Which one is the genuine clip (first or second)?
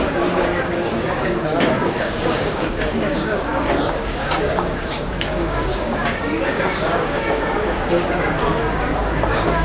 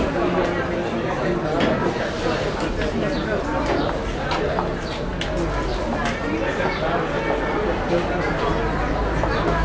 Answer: second